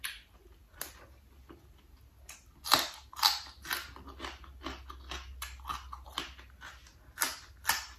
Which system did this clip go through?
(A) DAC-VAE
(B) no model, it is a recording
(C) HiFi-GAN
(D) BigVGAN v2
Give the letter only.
B